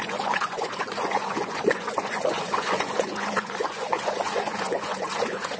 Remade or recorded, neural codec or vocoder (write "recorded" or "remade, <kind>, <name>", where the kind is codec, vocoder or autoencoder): remade, vocoder, Vocos